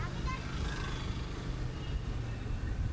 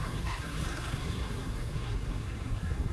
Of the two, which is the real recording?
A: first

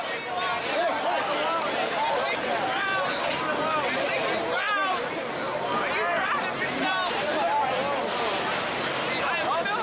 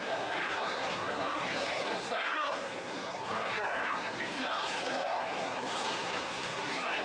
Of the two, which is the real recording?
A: first